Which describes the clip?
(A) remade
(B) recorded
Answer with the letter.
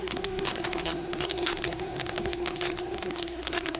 A